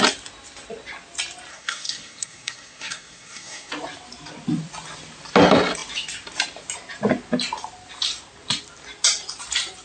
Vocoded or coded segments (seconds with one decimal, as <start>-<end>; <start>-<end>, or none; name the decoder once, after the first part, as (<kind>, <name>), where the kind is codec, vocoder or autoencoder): 1.5-3.7 (codec, SNAC)